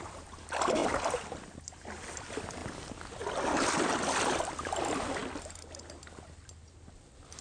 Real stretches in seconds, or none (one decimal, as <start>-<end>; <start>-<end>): 0.0-7.4